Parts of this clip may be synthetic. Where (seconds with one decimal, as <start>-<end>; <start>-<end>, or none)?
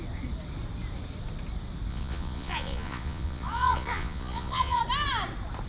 1.9-4.8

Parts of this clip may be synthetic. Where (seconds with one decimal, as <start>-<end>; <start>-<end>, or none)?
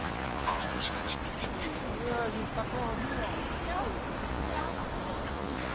0.0-1.2; 4.3-4.8; 5.3-5.7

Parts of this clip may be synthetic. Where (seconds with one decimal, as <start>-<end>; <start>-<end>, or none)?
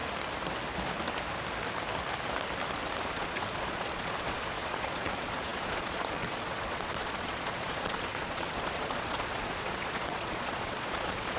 3.1-11.4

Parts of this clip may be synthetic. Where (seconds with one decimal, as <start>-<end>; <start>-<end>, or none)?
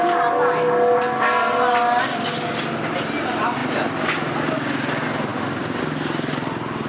none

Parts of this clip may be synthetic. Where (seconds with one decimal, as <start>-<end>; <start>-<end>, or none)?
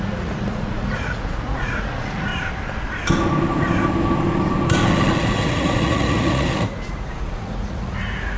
0.0-2.3; 5.2-8.4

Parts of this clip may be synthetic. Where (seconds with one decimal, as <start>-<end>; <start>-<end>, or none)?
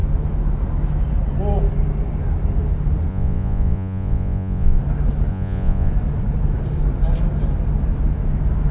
3.1-4.8; 5.3-5.9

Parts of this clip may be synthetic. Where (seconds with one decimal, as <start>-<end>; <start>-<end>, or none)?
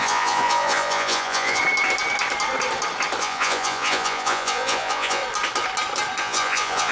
0.0-1.6; 3.2-5.2; 6.2-6.9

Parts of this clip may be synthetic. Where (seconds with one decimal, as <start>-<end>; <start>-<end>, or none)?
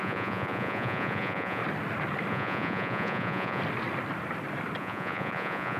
0.0-1.6; 2.3-3.6; 4.8-5.8